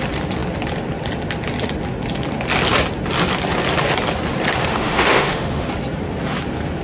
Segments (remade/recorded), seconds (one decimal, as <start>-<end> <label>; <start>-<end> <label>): 0.0-4.6 recorded; 4.6-5.7 remade; 5.7-6.8 recorded